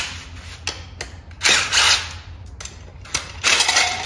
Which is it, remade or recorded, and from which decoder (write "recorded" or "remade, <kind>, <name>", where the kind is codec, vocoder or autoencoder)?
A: recorded